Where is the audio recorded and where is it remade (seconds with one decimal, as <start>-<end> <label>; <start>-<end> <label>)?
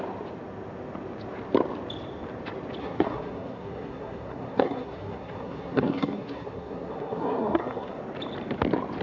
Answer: 0.0-2.8 recorded; 2.8-8.0 remade; 8.0-9.0 recorded